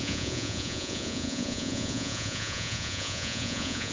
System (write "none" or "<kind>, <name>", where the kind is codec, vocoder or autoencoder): vocoder, Vocos